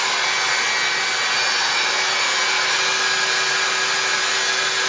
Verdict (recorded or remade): recorded